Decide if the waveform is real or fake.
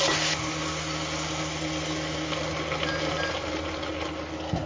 real